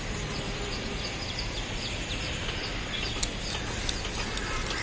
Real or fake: real